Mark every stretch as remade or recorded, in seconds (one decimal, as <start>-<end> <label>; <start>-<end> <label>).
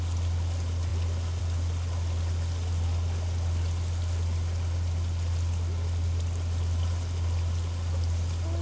0.0-8.6 recorded